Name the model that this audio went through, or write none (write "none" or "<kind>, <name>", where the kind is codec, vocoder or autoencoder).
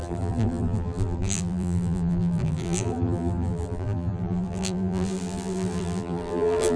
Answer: vocoder, BigVGAN v2